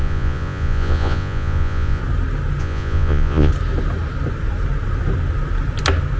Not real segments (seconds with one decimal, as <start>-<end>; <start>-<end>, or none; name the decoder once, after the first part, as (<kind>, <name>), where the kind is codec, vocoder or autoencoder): 0.0-2.0 (vocoder, Vocos); 2.6-3.5